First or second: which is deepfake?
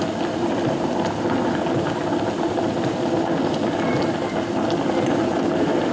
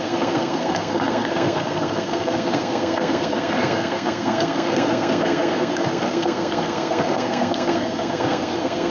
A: second